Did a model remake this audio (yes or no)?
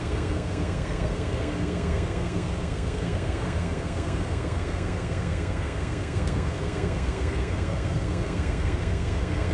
yes